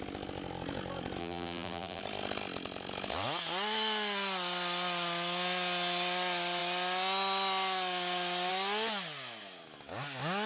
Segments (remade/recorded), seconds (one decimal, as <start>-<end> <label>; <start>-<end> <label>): 0.0-1.2 recorded; 1.2-2.0 remade; 2.0-10.5 recorded